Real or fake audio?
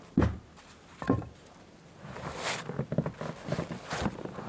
real